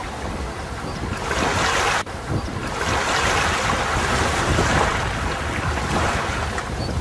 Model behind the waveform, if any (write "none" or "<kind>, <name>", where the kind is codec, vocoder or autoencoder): none